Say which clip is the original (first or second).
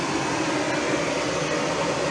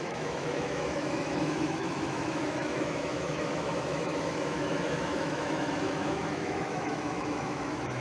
first